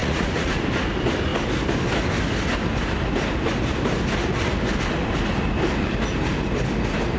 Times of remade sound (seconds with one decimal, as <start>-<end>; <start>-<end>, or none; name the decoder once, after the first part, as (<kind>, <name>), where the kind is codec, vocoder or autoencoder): 0.0-0.6 (vocoder, Vocos)